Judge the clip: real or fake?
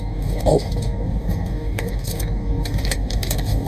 fake